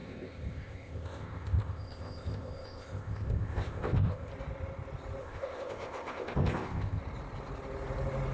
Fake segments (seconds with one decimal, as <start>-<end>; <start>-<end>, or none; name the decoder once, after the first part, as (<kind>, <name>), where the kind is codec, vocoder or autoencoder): 0.0-4.3 (codec, ZipCodec); 5.2-7.0